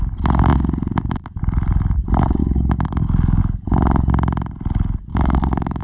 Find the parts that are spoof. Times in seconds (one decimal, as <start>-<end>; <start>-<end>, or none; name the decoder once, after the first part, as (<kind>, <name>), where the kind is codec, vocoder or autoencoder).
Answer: 2.4-3.4 (codec, DAC); 5.1-5.8